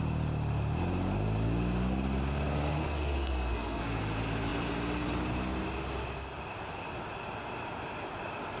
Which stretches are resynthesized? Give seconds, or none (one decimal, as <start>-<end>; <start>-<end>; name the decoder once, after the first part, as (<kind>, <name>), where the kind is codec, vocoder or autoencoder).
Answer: 2.8-4.0 (codec, SNAC)